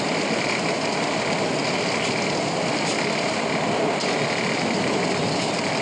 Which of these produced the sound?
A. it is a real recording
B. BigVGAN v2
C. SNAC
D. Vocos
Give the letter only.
A